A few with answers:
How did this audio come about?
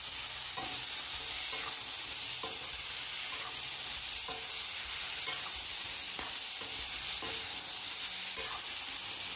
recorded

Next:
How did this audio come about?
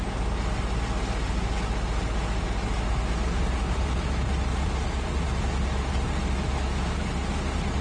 recorded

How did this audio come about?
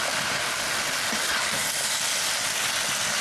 recorded